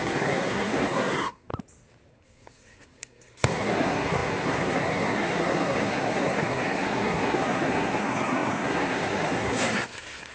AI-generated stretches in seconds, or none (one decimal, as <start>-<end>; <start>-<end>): 0.0-1.5; 2.1-10.3